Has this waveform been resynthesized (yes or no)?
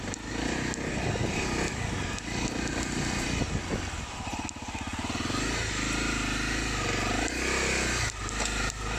no